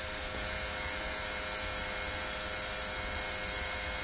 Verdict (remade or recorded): recorded